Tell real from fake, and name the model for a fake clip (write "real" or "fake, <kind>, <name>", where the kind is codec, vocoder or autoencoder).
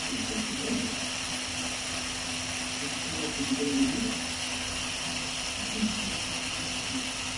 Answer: real